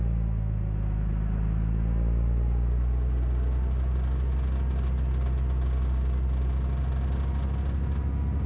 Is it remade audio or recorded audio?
recorded